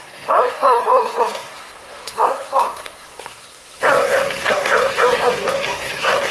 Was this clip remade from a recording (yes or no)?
yes